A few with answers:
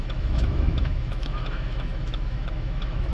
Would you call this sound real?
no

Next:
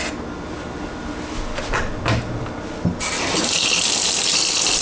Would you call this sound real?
yes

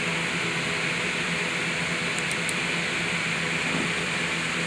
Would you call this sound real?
yes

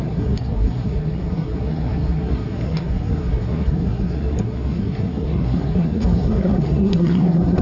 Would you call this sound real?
no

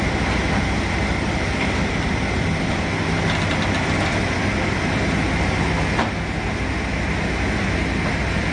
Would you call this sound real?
yes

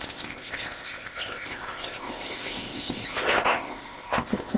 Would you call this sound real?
no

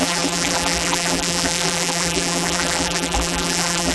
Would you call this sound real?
no